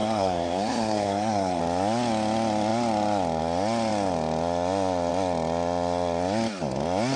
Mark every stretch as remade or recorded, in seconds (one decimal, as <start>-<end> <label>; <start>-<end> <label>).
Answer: 0.0-1.6 remade; 1.6-7.2 recorded